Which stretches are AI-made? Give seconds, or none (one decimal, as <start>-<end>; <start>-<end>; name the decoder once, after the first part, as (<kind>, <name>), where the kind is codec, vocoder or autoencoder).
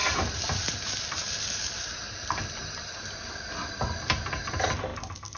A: 0.0-3.2 (vocoder, BigVGAN v2); 4.9-5.4